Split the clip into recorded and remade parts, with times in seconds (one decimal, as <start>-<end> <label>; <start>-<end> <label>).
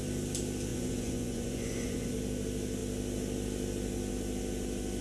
0.0-0.7 recorded; 0.7-2.1 remade; 2.1-5.0 recorded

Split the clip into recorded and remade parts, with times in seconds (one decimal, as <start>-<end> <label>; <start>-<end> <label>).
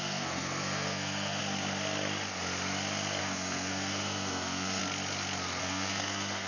0.0-1.4 remade; 1.4-3.2 recorded; 3.2-4.8 remade; 4.8-5.6 recorded; 5.6-6.5 remade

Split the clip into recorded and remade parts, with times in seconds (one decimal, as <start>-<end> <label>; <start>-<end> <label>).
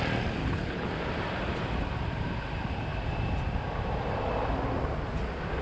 0.0-0.4 recorded; 0.4-0.9 remade; 0.9-5.6 recorded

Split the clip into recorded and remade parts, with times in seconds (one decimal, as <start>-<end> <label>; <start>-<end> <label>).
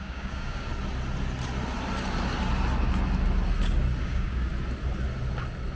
0.0-0.7 remade; 0.7-4.0 recorded; 4.0-4.5 remade; 4.5-5.8 recorded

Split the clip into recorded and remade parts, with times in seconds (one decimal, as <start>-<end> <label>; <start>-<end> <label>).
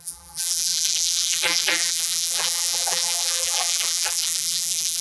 0.0-5.0 remade